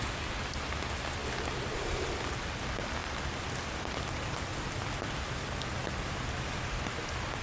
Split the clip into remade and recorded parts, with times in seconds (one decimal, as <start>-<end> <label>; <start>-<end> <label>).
0.0-3.0 recorded; 3.0-5.2 remade; 5.2-7.4 recorded